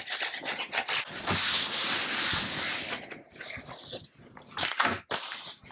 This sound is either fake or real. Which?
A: real